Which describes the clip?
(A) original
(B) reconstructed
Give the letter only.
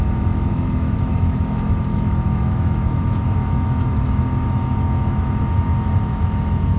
B